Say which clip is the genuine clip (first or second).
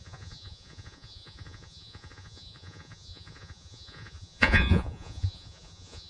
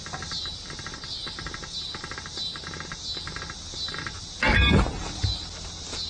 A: second